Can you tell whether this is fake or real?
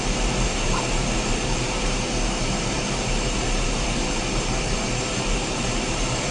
fake